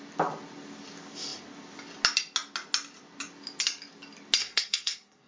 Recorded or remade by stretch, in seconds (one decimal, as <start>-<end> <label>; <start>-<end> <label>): 0.0-4.4 recorded; 4.4-5.3 remade